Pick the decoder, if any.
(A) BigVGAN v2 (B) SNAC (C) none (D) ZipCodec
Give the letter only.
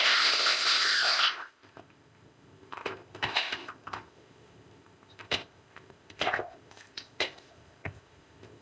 D